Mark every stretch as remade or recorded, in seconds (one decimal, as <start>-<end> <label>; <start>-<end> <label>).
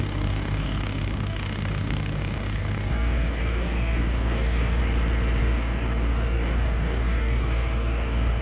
0.0-4.8 remade; 4.8-5.4 recorded; 5.4-8.4 remade